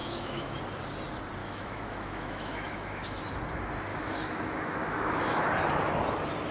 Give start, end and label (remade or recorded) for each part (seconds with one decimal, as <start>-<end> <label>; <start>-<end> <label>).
0.0-0.6 remade; 0.6-1.4 recorded; 1.4-3.2 remade; 3.2-3.9 recorded; 3.9-5.4 remade; 5.4-6.5 recorded